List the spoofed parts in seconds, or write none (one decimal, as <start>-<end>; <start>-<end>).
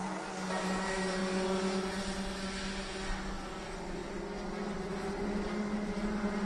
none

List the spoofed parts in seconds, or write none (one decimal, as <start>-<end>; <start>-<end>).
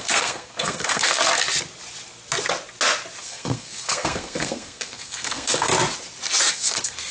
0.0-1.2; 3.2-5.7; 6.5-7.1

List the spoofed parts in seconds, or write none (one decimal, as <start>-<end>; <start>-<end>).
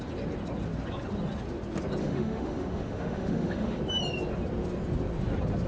2.0-3.8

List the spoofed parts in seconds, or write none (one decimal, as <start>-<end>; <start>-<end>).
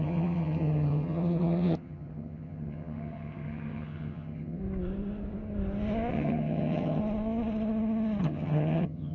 0.0-4.6; 6.1-7.0; 8.2-9.1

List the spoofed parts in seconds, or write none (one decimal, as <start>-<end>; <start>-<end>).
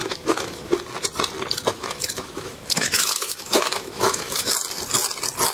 0.0-0.7; 1.7-4.5